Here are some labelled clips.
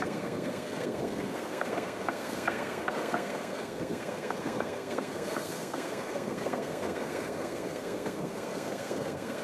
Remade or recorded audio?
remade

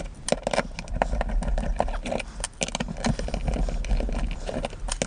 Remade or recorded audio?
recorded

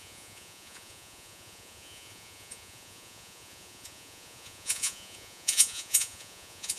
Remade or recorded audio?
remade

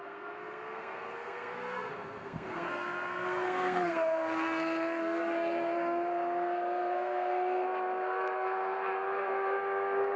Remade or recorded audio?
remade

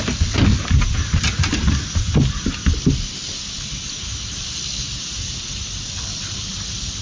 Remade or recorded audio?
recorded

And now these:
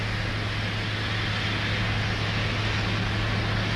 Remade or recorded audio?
recorded